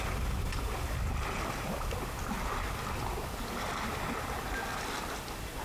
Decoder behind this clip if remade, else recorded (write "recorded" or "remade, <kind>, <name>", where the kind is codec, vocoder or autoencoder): recorded